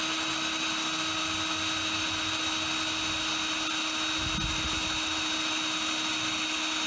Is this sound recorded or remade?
recorded